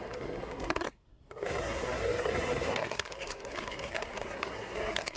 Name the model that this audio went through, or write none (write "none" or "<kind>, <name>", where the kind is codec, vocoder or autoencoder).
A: codec, SNAC